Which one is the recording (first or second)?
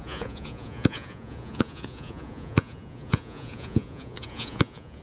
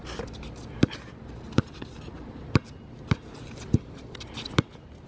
second